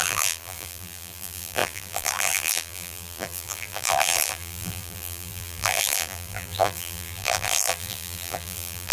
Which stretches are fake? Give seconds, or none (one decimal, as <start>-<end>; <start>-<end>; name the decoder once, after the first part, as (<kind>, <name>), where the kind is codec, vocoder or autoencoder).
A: 0.0-8.9 (vocoder, BigVGAN v2)